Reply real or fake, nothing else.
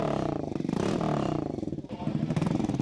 fake